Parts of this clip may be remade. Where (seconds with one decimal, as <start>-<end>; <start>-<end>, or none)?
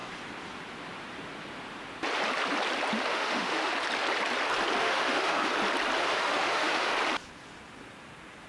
3.1-3.7; 4.8-5.5; 6.0-6.9